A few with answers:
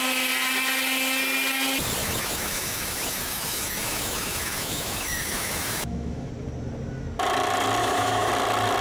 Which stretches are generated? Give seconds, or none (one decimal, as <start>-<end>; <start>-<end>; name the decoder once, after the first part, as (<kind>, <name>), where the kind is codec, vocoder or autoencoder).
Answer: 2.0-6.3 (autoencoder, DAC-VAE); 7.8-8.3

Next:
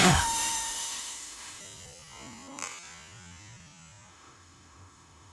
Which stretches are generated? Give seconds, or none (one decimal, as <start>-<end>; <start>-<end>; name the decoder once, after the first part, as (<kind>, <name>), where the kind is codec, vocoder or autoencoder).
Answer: 0.0-1.6 (autoencoder, DAC-VAE); 4.1-5.3

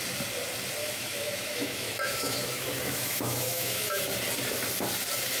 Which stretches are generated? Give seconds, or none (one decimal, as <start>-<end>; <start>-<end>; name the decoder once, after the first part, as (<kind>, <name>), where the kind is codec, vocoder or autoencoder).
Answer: 0.8-4.0 (autoencoder, DAC-VAE)

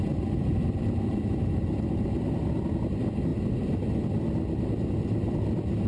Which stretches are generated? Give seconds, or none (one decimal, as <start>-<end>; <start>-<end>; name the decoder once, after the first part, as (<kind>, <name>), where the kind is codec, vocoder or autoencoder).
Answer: none

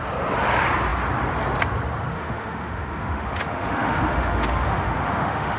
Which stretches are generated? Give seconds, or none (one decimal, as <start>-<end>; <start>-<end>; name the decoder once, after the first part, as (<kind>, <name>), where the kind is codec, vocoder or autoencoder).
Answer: 2.1-5.6 (autoencoder, DAC-VAE)

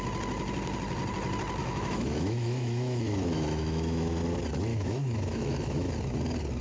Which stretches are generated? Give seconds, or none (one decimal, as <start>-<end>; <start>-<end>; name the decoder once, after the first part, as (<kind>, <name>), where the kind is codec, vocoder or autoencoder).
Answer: 1.6-4.2 (autoencoder, DAC-VAE); 4.7-5.9